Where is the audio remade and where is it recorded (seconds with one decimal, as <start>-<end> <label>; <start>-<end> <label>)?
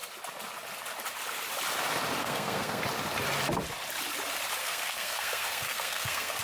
0.0-2.2 recorded; 2.2-2.8 remade; 2.8-4.6 recorded; 4.6-6.4 remade